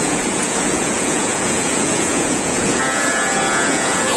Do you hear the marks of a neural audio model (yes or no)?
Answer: yes